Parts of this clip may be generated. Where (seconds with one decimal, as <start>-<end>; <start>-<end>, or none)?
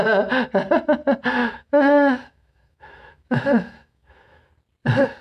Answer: 1.4-4.5